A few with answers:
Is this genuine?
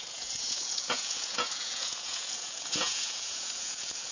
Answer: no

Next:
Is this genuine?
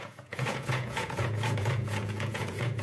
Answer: no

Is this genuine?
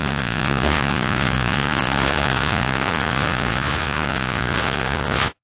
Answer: no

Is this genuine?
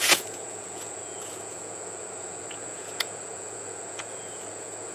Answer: no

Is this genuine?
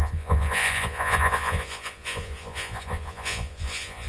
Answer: no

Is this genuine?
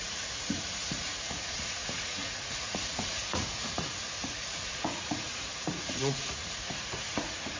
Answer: no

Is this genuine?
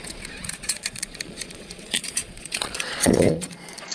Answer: no